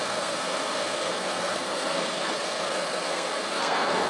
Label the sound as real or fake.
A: fake